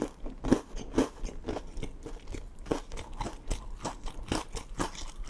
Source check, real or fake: real